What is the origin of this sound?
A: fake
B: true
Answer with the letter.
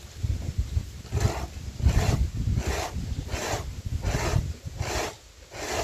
B